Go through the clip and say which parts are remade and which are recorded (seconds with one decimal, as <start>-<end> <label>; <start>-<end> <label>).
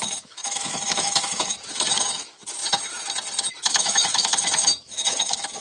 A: 0.0-2.6 remade; 2.6-3.5 recorded; 3.5-5.6 remade